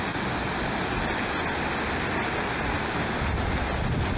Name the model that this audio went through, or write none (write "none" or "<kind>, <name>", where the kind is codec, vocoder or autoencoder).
none